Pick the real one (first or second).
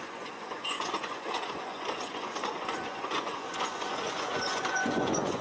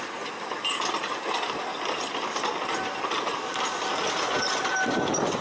second